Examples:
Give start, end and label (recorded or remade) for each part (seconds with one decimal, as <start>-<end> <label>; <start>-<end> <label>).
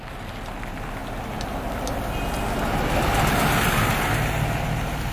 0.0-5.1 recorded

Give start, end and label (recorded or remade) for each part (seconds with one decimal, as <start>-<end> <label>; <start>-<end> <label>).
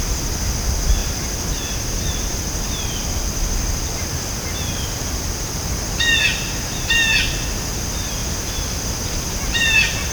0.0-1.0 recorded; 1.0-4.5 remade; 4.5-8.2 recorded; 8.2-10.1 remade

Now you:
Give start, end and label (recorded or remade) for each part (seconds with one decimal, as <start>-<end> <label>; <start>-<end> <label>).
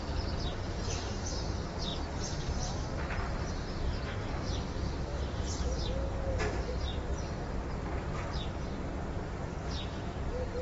0.0-6.9 remade; 6.9-10.6 recorded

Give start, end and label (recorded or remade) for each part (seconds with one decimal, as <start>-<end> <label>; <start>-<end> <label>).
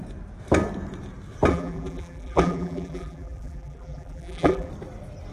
0.0-1.5 recorded; 1.5-4.7 remade; 4.7-5.3 recorded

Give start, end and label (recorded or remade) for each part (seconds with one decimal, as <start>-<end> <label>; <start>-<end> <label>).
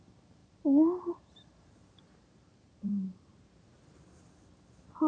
0.0-0.4 recorded; 0.4-3.5 remade; 3.5-5.1 recorded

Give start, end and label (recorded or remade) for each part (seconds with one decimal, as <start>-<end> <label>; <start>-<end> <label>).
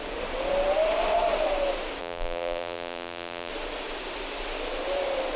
0.0-2.0 recorded; 2.0-3.5 remade; 3.5-5.4 recorded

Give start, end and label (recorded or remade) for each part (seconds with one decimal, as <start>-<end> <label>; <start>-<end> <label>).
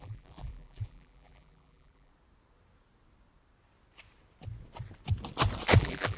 0.0-2.1 remade; 2.1-5.8 recorded; 5.8-6.2 remade